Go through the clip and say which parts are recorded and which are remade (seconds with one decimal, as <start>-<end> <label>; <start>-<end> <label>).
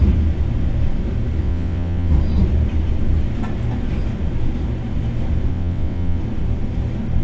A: 0.0-1.4 recorded; 1.4-2.1 remade; 2.1-5.5 recorded; 5.5-6.2 remade; 6.2-7.2 recorded